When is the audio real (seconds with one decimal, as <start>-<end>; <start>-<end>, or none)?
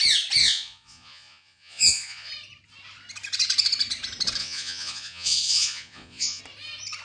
0.0-0.4; 2.3-4.4; 6.4-7.0